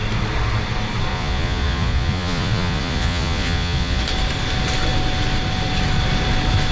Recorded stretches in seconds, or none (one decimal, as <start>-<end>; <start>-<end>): 0.0-1.1; 4.0-6.7

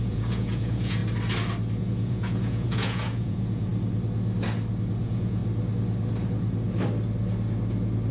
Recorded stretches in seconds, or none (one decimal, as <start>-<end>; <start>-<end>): 1.0-1.8; 3.7-5.0; 5.4-8.1

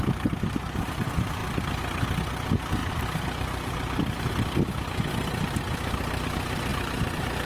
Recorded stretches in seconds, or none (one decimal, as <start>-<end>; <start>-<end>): 0.0-7.5

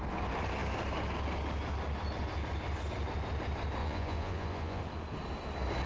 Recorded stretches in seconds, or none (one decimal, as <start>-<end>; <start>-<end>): 0.0-3.8; 4.8-5.9

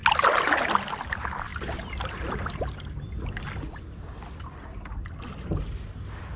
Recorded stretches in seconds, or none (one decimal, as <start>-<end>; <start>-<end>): 0.0-6.4

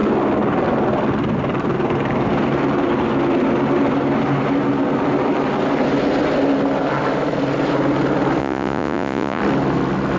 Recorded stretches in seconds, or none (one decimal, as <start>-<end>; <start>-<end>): 0.0-8.4; 9.4-10.2